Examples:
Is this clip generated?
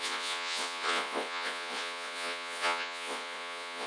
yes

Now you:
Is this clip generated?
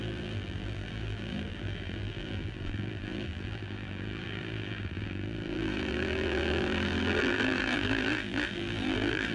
yes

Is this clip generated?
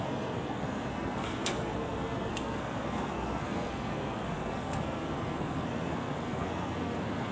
yes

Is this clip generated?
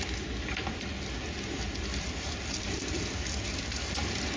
no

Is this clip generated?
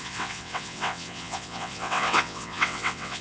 yes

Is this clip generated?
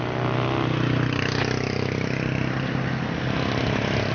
no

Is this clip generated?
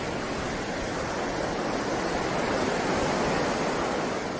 no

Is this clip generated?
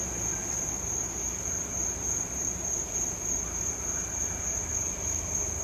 yes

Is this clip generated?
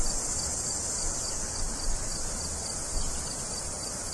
no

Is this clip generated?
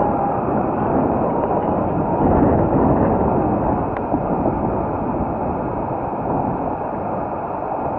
no